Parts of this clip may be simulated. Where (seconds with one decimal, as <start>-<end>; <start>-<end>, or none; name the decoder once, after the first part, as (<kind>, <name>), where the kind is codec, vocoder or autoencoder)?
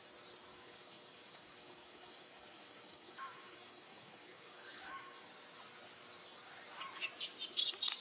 0.5-5.3 (codec, DAC)